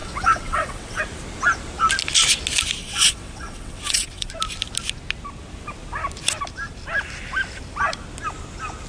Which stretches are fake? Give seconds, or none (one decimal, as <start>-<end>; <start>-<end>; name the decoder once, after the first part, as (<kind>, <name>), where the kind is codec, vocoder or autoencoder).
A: 0.0-1.0 (vocoder, WaveNeXt); 2.8-4.3